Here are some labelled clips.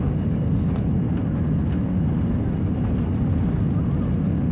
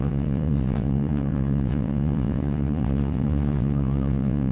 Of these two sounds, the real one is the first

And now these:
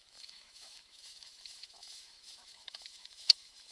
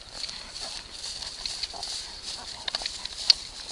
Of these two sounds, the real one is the second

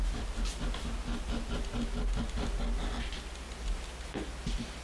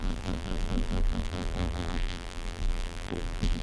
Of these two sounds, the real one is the first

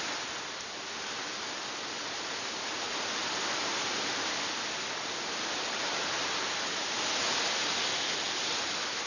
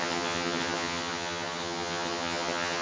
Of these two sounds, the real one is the first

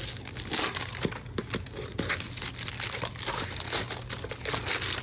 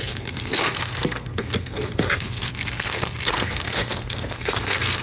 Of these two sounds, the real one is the first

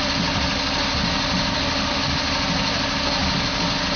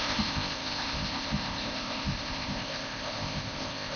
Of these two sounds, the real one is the first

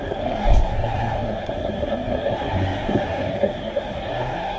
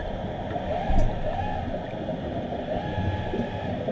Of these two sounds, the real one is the second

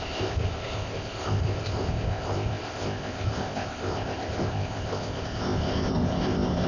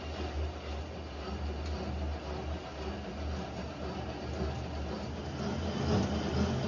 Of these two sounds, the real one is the second